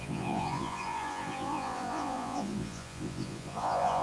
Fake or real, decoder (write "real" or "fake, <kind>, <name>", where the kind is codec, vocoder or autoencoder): fake, vocoder, Vocos